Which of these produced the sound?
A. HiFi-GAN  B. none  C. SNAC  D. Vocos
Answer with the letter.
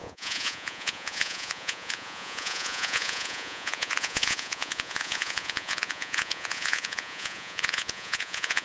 D